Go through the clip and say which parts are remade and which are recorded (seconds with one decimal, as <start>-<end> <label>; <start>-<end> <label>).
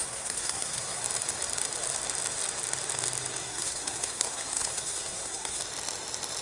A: 0.0-1.0 remade; 1.0-3.4 recorded; 3.4-5.6 remade; 5.6-6.4 recorded